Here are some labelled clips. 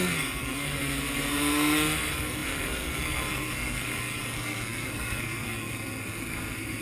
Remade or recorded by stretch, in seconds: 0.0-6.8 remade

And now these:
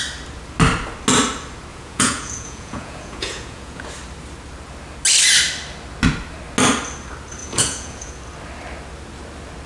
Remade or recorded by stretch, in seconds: 0.0-1.7 recorded; 1.7-3.9 remade; 3.9-7.4 recorded; 7.4-8.2 remade; 8.2-9.7 recorded

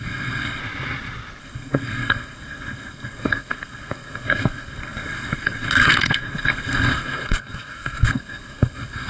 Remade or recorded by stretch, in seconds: 0.0-0.6 remade; 0.6-1.4 recorded; 1.4-9.1 remade

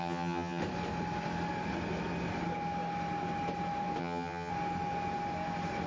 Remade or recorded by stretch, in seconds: 0.0-0.6 remade; 0.6-4.0 recorded; 4.0-4.5 remade; 4.5-5.9 recorded